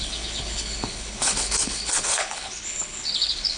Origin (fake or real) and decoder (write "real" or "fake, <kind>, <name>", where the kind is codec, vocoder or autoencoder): fake, codec, HILCodec